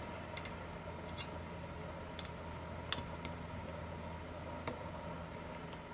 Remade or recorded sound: recorded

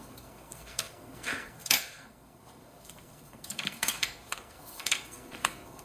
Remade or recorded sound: remade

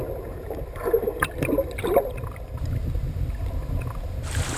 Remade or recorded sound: recorded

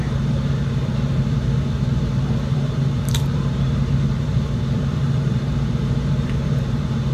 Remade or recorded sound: remade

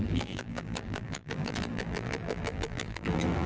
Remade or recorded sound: remade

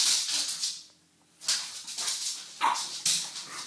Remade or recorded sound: recorded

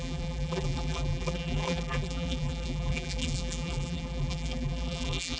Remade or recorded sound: remade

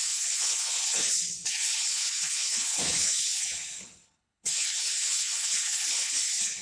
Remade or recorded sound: remade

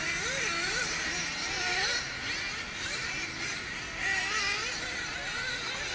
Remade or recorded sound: recorded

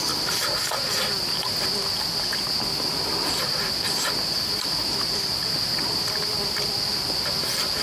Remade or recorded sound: recorded